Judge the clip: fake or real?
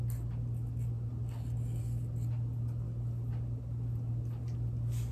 real